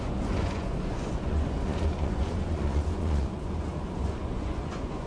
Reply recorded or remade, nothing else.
remade